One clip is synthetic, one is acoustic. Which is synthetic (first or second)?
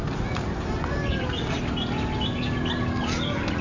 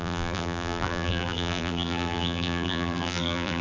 second